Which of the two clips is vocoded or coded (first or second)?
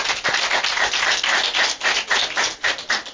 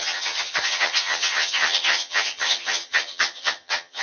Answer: second